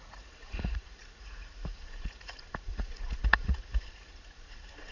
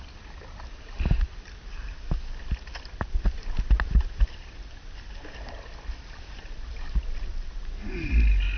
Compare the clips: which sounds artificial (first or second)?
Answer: first